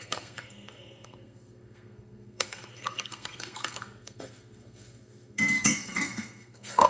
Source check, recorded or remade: remade